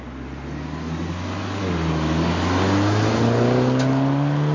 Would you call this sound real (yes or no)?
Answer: yes